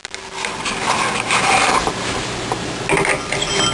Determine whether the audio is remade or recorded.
recorded